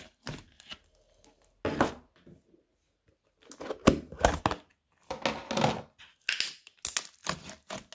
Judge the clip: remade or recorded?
recorded